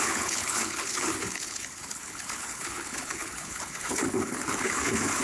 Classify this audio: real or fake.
fake